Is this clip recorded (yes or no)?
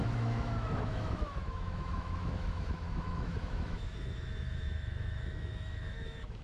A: no